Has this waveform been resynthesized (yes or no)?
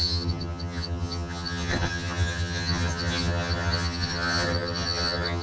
yes